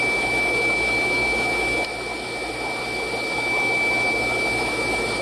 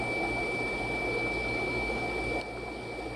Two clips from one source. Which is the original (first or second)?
second